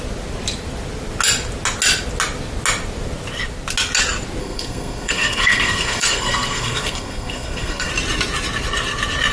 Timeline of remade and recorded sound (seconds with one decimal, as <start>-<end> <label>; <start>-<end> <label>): 0.0-4.4 recorded; 4.4-7.9 remade; 7.9-9.3 recorded

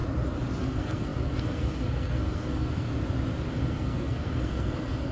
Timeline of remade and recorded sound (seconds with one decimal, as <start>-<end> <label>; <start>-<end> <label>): 0.0-0.6 recorded; 0.6-2.9 remade; 2.9-3.5 recorded; 3.5-5.1 remade

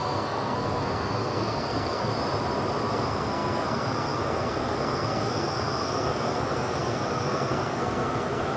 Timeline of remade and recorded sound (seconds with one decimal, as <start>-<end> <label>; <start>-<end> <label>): 0.0-2.1 remade; 2.1-2.9 recorded; 2.9-8.6 remade

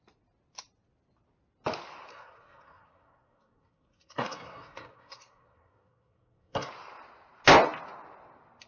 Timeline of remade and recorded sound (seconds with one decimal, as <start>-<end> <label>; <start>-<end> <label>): 0.0-2.1 recorded; 2.1-6.7 remade; 6.7-8.7 recorded

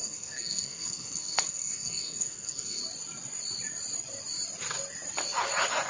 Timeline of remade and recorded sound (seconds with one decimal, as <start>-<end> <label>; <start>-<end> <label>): 0.0-2.8 remade; 2.8-5.9 recorded

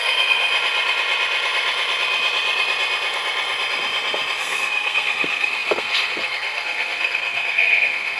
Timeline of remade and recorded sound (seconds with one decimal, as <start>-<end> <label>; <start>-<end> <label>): 0.0-0.5 remade; 0.5-4.4 recorded; 4.4-8.2 remade